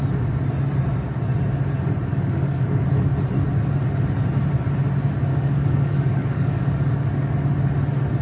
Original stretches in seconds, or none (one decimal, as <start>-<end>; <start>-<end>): 0.0-2.1; 2.9-5.3; 7.3-8.2